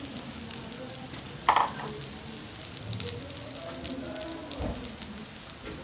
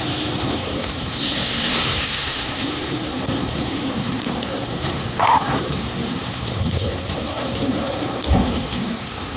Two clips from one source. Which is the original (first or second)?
first